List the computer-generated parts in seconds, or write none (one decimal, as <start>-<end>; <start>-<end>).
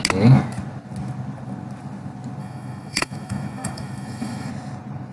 2.4-4.5